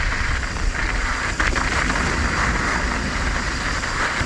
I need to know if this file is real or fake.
real